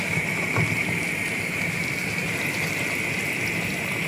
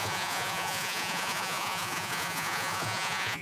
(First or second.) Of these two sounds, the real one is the first